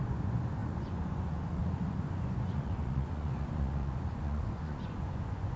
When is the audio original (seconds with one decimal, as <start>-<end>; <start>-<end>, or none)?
none